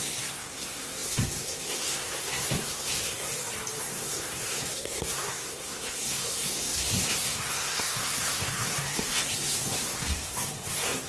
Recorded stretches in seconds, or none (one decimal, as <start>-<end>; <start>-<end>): 3.3-3.8